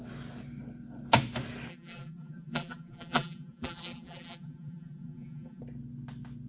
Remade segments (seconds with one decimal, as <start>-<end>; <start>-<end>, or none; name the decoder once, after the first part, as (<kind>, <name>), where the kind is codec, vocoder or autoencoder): 1.7-5.6 (vocoder, BigVGAN v2)